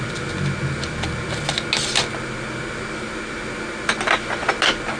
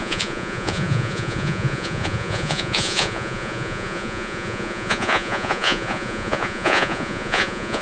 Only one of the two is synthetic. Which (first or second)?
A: second